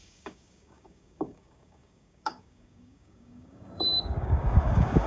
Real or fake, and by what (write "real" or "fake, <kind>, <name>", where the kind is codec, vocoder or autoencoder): fake, codec, DAC